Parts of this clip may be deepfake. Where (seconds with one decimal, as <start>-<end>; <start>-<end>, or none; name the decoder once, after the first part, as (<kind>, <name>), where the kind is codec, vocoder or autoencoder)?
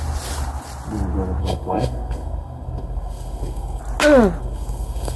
1.4-3.8 (codec, SNAC); 4.4-5.2